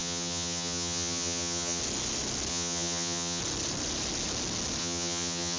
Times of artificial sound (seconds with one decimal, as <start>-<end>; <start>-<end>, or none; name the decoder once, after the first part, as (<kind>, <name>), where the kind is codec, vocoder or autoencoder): 0.0-1.8 (vocoder, HiFi-GAN); 2.5-3.4; 4.8-5.6